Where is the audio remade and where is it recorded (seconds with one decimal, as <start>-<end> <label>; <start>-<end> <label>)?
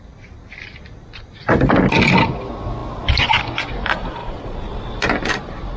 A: 0.0-4.2 recorded; 4.2-4.8 remade; 4.8-5.8 recorded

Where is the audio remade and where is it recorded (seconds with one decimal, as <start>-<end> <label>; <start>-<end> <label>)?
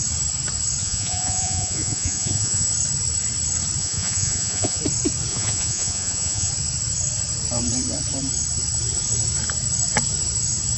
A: 0.0-0.8 recorded; 0.8-2.7 remade; 2.7-3.8 recorded; 3.8-4.8 remade; 4.8-5.3 recorded; 5.3-6.5 remade; 6.5-10.8 recorded